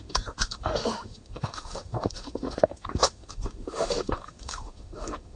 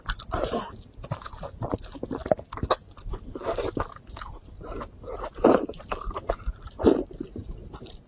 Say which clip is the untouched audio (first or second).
second